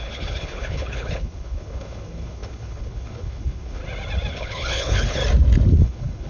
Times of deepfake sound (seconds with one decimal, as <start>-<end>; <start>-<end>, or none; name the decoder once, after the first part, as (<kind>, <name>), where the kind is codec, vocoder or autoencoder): 0.0-3.8 (codec, HILCodec); 4.3-5.2; 5.7-6.3